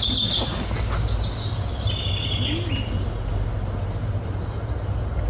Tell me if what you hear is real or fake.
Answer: real